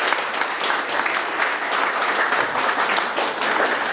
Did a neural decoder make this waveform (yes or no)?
no